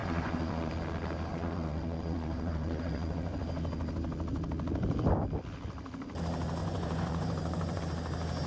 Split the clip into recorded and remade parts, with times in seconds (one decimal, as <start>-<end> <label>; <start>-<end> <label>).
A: 0.0-0.7 remade; 0.7-1.3 recorded; 1.3-3.4 remade; 3.4-6.6 recorded; 6.6-7.8 remade; 7.8-8.5 recorded

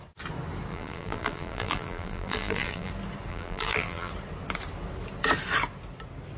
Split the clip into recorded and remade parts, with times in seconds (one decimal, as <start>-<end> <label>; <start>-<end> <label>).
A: 0.0-0.7 recorded; 0.7-2.9 remade; 2.9-3.3 recorded; 3.3-4.1 remade; 4.1-6.4 recorded

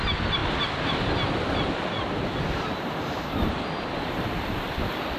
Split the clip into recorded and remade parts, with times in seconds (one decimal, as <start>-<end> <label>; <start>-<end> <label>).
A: 0.0-5.2 recorded